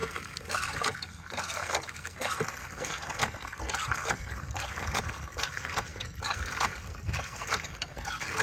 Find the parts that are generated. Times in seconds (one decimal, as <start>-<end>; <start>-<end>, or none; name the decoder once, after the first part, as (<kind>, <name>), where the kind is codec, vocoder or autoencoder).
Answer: 0.0-8.4 (codec, SNAC)